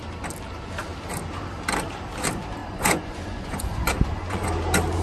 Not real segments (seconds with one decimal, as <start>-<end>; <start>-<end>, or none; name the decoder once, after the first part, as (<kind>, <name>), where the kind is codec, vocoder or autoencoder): 2.6-4.5 (vocoder, Vocos)